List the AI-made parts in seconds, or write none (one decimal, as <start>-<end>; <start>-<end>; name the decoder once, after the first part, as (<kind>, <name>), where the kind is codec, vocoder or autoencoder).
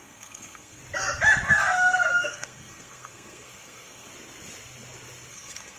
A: 0.0-0.8 (codec, SNAC); 1.5-4.1; 5.3-5.8